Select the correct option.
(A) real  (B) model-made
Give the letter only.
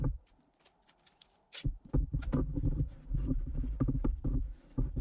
B